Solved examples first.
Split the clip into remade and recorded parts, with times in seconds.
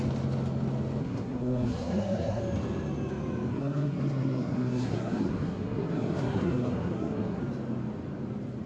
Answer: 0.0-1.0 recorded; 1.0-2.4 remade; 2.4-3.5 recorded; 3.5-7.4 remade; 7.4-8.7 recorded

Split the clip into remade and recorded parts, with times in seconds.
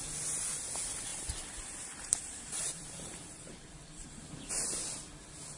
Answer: 0.0-1.1 recorded; 1.1-4.5 remade; 4.5-5.6 recorded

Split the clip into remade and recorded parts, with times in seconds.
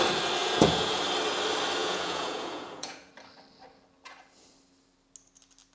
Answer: 0.0-0.4 recorded; 0.4-1.0 remade; 1.0-1.8 recorded; 1.8-3.1 remade; 3.1-5.7 recorded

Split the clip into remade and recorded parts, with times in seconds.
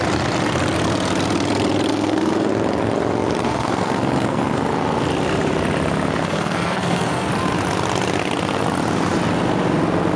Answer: 0.0-1.9 recorded; 1.9-2.5 remade; 2.5-3.4 recorded; 3.4-4.6 remade; 4.6-6.2 recorded; 6.2-7.3 remade; 7.3-10.2 recorded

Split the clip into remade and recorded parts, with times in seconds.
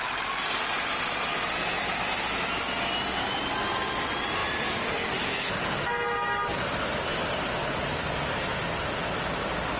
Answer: 0.0-9.8 recorded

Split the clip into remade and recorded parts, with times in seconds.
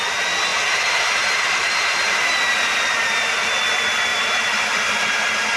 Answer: 0.0-0.5 recorded; 0.5-2.8 remade; 2.8-4.1 recorded; 4.1-5.6 remade